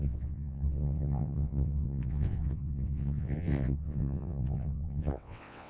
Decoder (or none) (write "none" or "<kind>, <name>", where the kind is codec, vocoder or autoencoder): vocoder, WaveNeXt